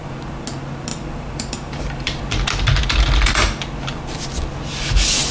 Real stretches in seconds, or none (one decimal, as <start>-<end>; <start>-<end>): 0.0-0.9; 2.2-5.3